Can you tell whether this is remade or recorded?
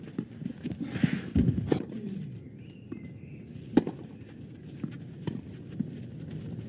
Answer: recorded